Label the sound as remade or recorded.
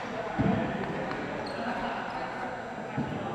recorded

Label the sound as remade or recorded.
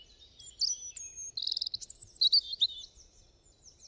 recorded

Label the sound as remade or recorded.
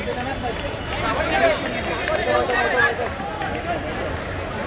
recorded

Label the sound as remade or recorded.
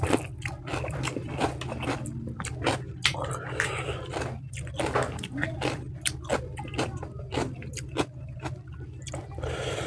recorded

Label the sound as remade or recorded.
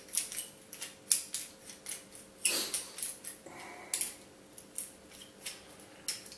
recorded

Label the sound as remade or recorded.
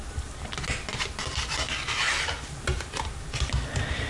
recorded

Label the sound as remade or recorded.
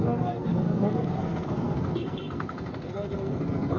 remade